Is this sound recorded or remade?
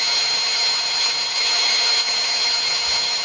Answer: remade